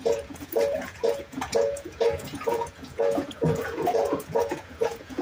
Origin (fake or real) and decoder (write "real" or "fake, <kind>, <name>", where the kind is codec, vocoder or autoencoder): fake, vocoder, Vocos